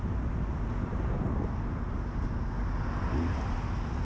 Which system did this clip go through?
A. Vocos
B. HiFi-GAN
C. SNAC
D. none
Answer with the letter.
D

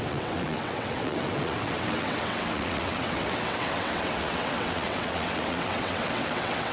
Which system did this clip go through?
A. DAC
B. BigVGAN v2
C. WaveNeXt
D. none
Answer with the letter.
C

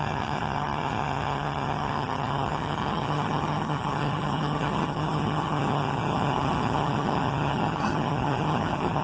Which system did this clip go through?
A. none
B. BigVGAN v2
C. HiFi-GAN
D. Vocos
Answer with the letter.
C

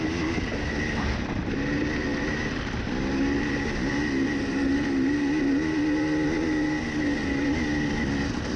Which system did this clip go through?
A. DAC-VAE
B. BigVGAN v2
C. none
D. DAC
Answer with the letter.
C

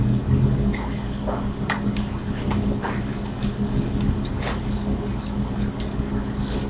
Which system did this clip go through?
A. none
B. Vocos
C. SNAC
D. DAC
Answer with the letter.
D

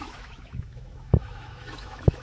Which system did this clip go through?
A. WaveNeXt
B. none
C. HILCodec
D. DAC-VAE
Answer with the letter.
D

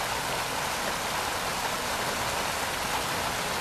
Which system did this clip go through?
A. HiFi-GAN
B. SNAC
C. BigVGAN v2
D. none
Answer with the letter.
D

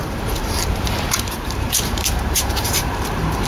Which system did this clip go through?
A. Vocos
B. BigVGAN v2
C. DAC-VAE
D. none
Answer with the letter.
B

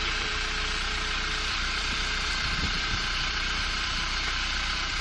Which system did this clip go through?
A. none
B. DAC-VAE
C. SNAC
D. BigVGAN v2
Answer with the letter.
D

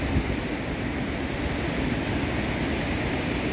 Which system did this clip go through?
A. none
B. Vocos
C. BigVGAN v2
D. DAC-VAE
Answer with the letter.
A